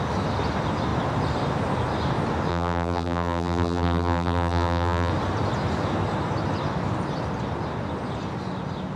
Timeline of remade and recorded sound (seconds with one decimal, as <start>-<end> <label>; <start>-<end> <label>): 0.0-2.5 recorded; 2.5-5.1 remade; 5.1-9.0 recorded